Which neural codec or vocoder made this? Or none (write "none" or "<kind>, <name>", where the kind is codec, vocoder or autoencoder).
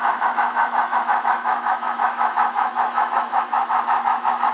autoencoder, DAC-VAE